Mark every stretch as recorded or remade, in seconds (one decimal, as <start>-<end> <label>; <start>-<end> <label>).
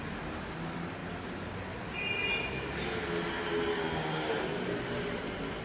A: 0.0-3.7 recorded; 3.7-4.3 remade; 4.3-5.6 recorded